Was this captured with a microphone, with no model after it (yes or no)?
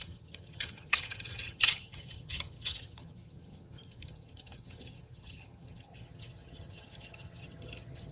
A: no